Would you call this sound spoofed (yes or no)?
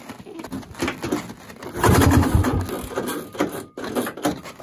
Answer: no